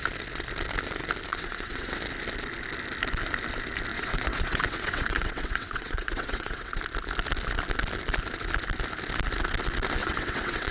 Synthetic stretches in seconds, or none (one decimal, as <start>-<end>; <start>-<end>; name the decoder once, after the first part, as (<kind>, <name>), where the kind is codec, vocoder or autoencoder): 1.3-2.0 (vocoder, WaveNeXt); 3.9-6.8; 10.0-10.7